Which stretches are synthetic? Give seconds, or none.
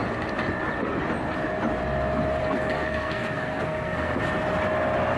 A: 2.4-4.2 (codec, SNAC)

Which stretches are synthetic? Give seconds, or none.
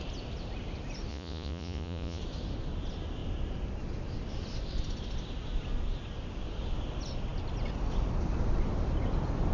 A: 1.1-2.2 (vocoder, Vocos)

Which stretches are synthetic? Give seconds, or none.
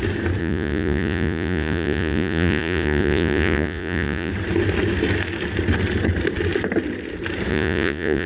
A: 0.4-4.3 (vocoder, Vocos); 7.5-8.3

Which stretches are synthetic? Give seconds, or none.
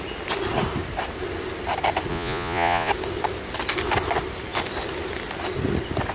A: 2.1-2.9 (vocoder, Vocos)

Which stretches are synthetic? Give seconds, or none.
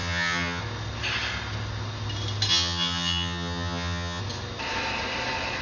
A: 0.0-0.6 (vocoder, HiFi-GAN); 2.5-4.2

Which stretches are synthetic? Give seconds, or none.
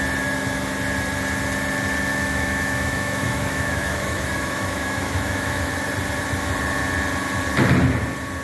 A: 2.1-5.7 (autoencoder, DAC-VAE)